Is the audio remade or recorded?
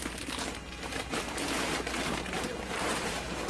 remade